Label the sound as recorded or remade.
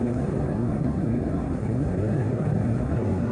remade